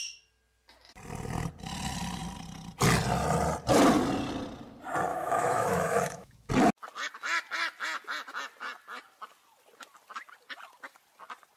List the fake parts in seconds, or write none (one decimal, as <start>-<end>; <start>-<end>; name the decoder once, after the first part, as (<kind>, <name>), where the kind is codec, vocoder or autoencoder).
5.1-6.5 (autoencoder, DAC-VAE)